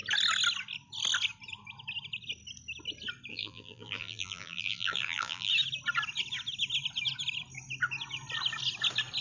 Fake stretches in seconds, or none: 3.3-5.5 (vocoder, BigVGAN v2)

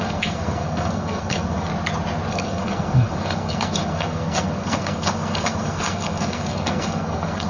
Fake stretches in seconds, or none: 0.0-1.7 (codec, SNAC); 2.3-7.5

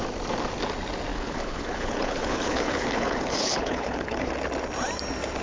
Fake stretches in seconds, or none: 1.1-4.3 (codec, HILCodec)

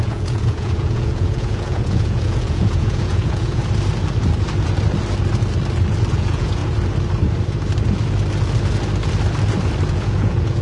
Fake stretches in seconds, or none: 0.0-3.6 (vocoder, Vocos); 6.1-6.6; 9.9-10.6